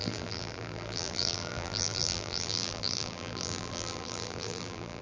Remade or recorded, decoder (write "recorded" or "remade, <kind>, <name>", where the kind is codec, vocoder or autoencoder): remade, vocoder, BigVGAN v2